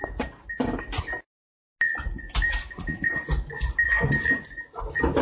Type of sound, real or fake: real